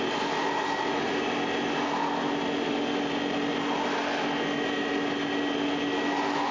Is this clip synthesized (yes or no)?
no